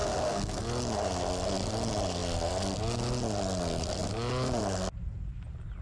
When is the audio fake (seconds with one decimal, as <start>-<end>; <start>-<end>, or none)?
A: 0.0-0.6